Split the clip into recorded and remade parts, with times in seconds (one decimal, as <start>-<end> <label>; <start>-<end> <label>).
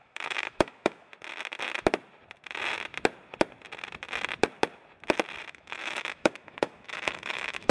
0.0-1.1 remade; 1.1-5.5 recorded; 5.5-7.7 remade